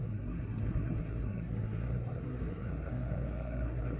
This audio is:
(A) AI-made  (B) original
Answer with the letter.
A